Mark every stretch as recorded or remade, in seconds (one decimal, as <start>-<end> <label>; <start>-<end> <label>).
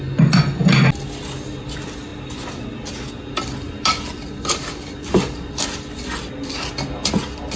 0.0-7.6 recorded